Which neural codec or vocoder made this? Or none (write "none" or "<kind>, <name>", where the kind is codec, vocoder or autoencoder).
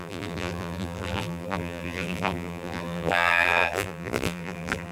vocoder, BigVGAN v2